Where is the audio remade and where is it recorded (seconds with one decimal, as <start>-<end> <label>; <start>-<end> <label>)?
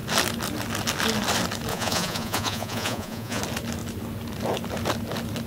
0.0-1.7 recorded; 1.7-3.4 remade; 3.4-5.5 recorded